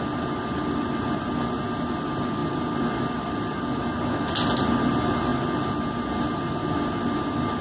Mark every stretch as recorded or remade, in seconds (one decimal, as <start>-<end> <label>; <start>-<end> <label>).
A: 0.0-7.6 recorded